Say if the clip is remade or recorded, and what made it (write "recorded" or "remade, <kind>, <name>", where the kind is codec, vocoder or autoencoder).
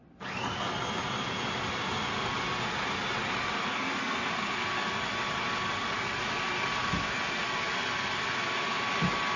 recorded